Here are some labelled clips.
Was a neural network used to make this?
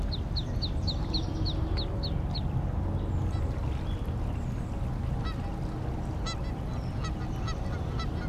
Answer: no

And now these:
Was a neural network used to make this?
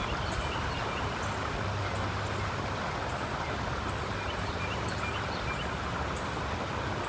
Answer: no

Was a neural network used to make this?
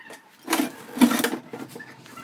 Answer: no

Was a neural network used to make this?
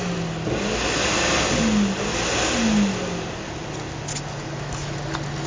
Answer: no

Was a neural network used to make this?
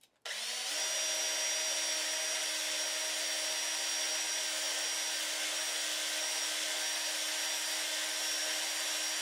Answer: no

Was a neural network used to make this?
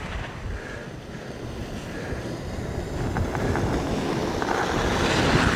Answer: no